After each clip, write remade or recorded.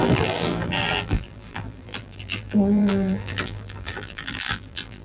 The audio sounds remade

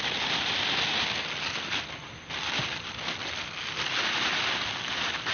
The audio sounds recorded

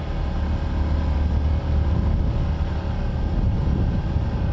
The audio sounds recorded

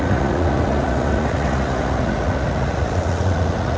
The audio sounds remade